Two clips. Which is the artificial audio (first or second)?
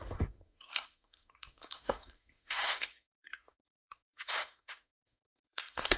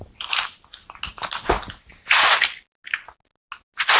first